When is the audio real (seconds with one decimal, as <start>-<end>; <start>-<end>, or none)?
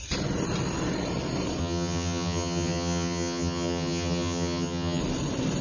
0.0-1.6; 5.0-5.6